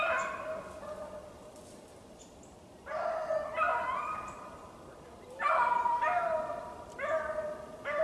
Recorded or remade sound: recorded